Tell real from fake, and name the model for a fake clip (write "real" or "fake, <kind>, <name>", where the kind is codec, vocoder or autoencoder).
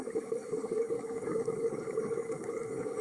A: fake, codec, DAC